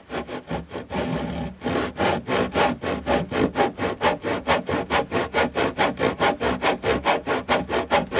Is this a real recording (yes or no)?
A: yes